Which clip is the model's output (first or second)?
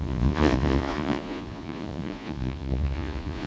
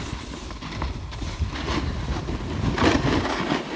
first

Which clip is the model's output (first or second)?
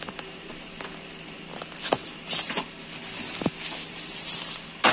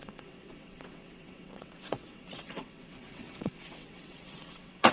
second